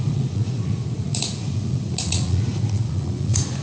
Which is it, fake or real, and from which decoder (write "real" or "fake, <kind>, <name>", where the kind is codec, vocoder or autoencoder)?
fake, vocoder, Vocos